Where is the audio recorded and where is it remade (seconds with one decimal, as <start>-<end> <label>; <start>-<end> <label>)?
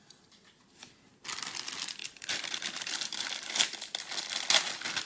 0.0-2.0 recorded; 2.0-3.3 remade; 3.3-5.1 recorded